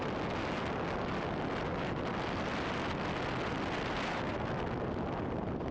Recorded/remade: recorded